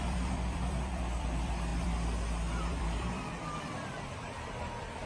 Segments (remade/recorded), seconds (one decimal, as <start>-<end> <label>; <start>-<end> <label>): 0.0-5.1 remade